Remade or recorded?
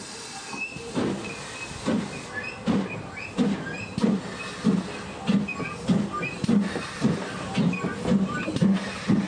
recorded